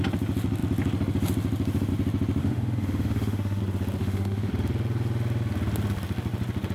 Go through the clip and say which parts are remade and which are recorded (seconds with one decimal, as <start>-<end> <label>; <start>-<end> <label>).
0.0-2.4 recorded; 2.4-3.6 remade; 3.6-4.0 recorded; 4.0-4.5 remade; 4.5-6.7 recorded